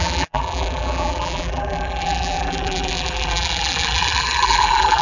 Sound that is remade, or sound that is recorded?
remade